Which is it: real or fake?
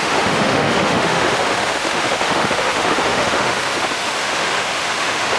fake